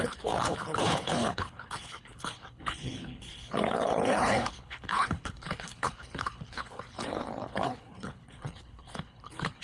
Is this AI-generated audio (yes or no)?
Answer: yes